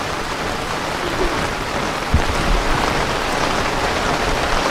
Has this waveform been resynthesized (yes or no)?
yes